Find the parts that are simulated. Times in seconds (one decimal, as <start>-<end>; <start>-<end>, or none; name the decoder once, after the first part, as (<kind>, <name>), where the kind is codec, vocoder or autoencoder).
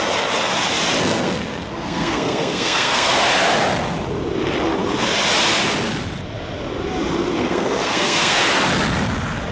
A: 1.0-3.1 (codec, SNAC); 7.4-8.4